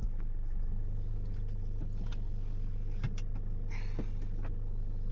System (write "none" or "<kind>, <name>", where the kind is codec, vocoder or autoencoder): none